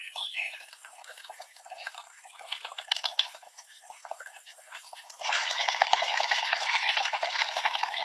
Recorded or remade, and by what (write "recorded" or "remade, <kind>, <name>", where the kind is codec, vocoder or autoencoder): remade, codec, SNAC